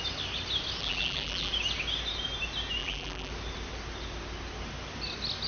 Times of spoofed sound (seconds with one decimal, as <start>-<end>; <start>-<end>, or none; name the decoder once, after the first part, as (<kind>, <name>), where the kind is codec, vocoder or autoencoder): 0.8-1.5 (vocoder, BigVGAN v2); 2.8-3.3